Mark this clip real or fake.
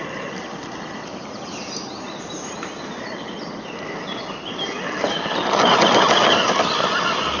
real